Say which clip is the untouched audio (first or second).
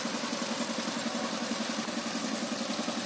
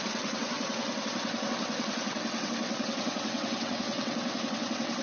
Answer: first